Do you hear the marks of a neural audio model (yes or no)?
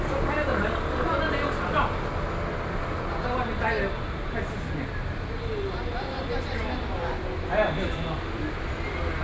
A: no